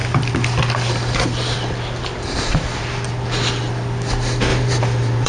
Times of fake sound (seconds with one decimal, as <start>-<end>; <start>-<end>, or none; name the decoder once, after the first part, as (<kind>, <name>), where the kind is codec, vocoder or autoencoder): 4.5-5.3 (vocoder, BigVGAN v2)